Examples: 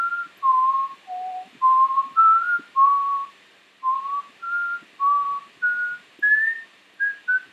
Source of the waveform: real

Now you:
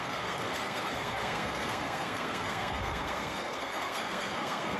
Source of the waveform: fake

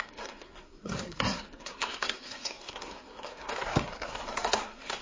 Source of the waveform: fake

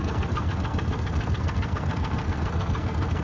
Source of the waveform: fake